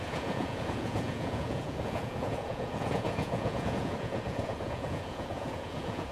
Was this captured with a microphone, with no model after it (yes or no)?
no